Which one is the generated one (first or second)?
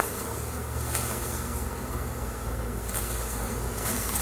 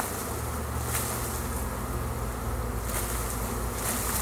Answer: first